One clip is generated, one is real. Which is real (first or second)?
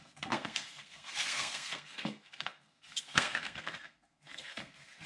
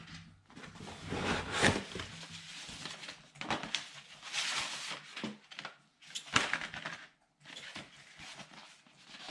second